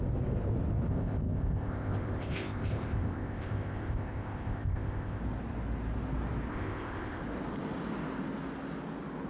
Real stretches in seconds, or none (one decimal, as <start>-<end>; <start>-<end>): 0.0-0.9; 5.2-6.5; 7.2-9.3